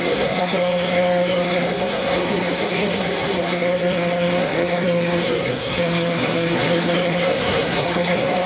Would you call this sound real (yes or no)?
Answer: no